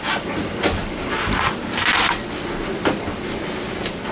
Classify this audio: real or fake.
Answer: real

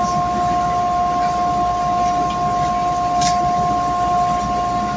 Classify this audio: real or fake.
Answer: real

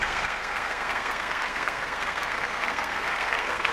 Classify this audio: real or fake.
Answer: fake